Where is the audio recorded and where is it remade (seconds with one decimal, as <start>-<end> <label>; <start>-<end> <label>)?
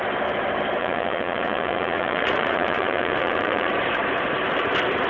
0.0-0.8 recorded; 0.8-3.7 remade; 3.7-5.1 recorded